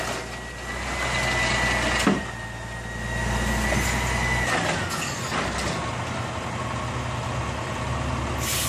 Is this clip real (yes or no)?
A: yes